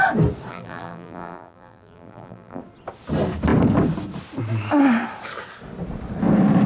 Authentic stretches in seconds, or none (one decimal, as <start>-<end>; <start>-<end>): 0.0-0.5; 2.6-6.7